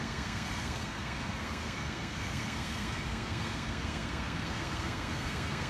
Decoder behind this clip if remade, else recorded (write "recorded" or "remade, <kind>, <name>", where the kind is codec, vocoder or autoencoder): remade, codec, SNAC